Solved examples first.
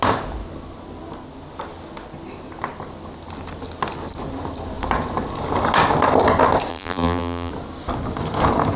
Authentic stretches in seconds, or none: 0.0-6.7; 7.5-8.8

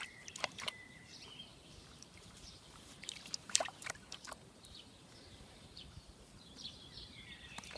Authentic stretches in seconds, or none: none

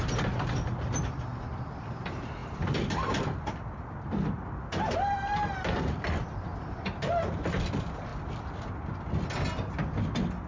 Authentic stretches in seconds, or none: 8.1-10.5

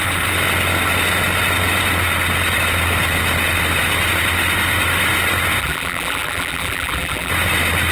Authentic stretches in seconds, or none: 0.0-5.6; 7.3-7.9

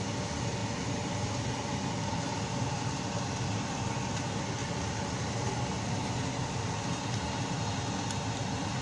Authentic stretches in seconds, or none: 0.0-8.8

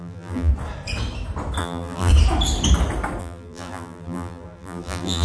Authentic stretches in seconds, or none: 0.5-1.6; 2.1-3.2

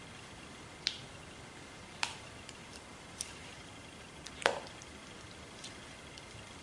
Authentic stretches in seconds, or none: 0.0-2.6; 4.6-6.6